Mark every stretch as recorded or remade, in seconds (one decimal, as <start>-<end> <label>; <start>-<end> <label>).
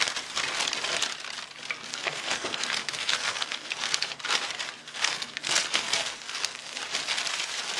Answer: 0.0-1.9 recorded; 1.9-4.2 remade; 4.2-4.8 recorded; 4.8-6.8 remade; 6.8-7.8 recorded